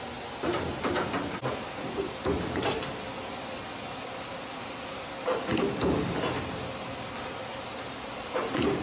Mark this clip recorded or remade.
recorded